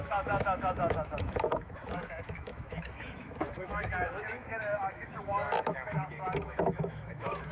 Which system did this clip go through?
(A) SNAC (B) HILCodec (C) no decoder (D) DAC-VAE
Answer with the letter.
D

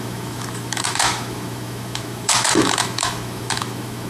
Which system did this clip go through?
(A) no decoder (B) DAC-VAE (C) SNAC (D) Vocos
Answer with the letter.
B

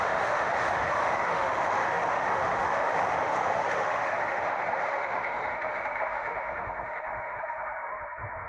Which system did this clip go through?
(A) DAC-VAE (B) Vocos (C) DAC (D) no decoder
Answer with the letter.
A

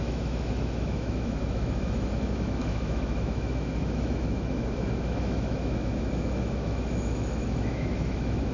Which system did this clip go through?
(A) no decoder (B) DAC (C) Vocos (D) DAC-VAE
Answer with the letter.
D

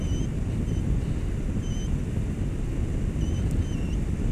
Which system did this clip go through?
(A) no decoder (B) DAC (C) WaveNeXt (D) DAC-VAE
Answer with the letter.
A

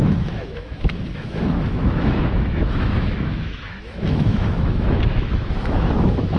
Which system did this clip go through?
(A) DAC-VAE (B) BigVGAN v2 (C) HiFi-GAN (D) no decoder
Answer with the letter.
A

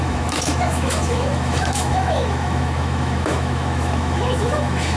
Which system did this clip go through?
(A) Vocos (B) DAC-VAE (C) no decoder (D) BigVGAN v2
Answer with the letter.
B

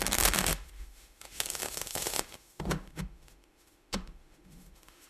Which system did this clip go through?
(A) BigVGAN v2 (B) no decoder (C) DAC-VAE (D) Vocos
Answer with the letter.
C